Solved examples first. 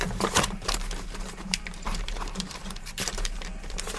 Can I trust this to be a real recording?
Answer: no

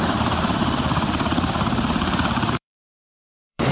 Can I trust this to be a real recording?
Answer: no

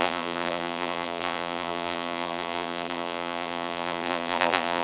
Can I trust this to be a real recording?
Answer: no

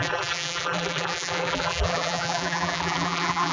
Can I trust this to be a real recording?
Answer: no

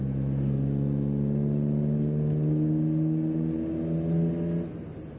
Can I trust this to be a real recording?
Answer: yes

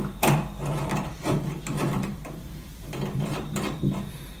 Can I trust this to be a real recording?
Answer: no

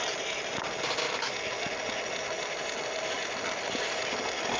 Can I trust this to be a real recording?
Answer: yes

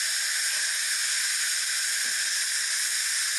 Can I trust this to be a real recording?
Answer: yes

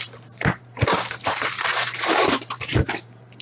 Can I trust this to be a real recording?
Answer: no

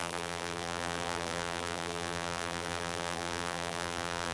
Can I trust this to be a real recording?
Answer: no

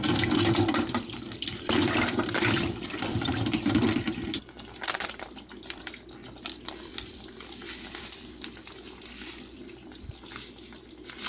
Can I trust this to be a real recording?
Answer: no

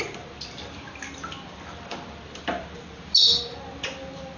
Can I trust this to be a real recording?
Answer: no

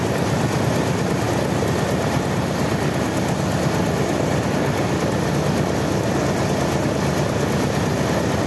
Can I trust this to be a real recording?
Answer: yes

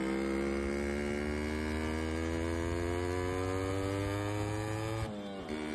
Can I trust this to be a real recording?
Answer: yes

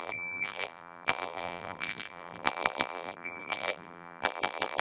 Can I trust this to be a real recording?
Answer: no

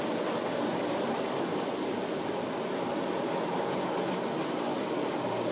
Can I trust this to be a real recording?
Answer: yes